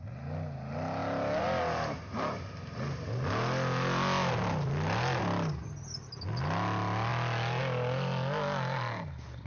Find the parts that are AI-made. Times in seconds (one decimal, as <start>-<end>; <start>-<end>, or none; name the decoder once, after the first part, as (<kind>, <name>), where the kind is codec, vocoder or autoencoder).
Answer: none